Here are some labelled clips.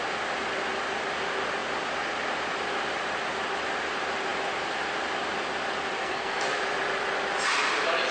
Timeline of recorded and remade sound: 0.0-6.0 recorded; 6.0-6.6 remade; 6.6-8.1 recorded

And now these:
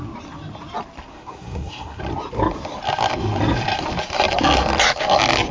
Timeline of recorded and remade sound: 0.0-1.1 recorded; 1.1-2.0 remade; 2.0-5.5 recorded

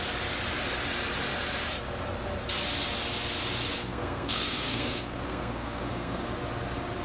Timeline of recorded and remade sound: 0.0-3.8 recorded; 3.8-6.3 remade; 6.3-7.0 recorded

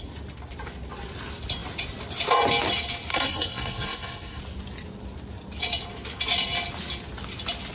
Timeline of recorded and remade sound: 0.0-3.1 recorded; 3.1-4.4 remade; 4.4-7.7 recorded

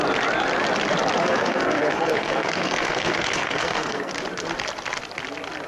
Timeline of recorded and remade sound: 0.0-1.2 recorded; 1.2-4.1 remade; 4.1-5.7 recorded